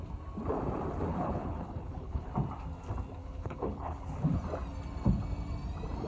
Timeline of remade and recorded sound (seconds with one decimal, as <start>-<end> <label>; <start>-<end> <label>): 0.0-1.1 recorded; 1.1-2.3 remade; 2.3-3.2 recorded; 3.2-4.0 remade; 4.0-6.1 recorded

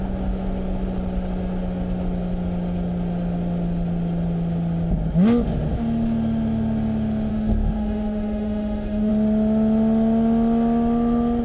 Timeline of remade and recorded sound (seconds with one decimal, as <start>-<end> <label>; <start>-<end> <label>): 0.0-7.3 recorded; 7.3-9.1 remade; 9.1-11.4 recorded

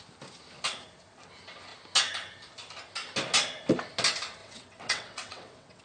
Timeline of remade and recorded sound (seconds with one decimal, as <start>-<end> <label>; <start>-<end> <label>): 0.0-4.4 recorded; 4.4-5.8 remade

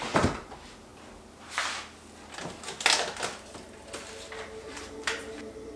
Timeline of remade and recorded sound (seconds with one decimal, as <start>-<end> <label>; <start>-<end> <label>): 0.0-0.9 remade; 0.9-4.4 recorded; 4.4-5.8 remade

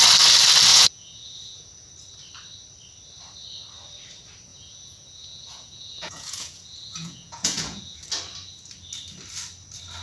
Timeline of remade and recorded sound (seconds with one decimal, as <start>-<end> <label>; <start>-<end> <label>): 0.0-0.7 recorded; 0.7-1.9 remade; 1.9-4.5 recorded; 4.5-8.0 remade; 8.0-10.0 recorded